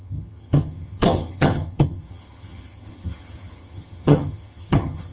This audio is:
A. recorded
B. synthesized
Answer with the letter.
B